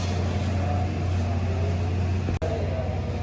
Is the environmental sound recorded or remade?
recorded